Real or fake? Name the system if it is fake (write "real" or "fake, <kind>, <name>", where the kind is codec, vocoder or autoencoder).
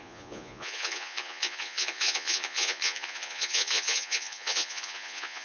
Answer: fake, vocoder, Vocos